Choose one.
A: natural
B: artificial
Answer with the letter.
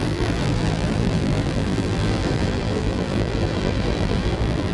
B